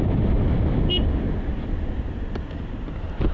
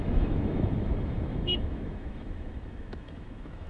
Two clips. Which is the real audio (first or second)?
first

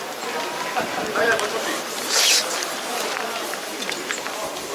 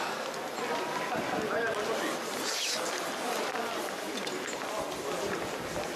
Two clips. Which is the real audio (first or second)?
second